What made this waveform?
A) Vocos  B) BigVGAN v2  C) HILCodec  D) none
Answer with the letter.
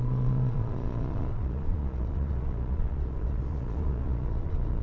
A